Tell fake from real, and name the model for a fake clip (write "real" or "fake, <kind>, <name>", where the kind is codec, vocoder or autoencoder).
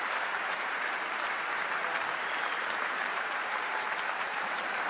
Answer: fake, vocoder, BigVGAN v2